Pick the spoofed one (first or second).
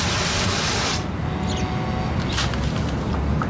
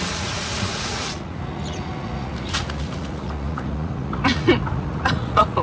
second